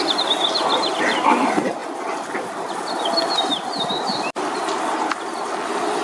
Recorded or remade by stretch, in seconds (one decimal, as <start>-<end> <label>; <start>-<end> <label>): 0.0-6.0 recorded